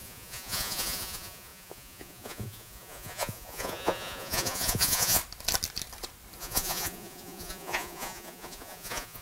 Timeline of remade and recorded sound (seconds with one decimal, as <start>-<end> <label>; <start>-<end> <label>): 0.0-5.2 remade; 5.2-6.4 recorded; 6.4-9.2 remade